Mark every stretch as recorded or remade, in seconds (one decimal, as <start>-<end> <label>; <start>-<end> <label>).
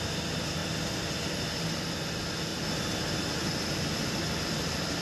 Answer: 0.0-0.6 remade; 0.6-1.6 recorded; 1.6-2.5 remade; 2.5-3.5 recorded; 3.5-5.0 remade